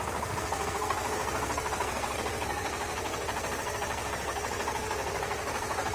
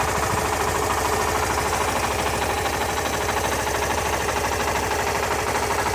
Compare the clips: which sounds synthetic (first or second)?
first